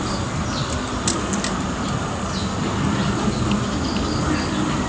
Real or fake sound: real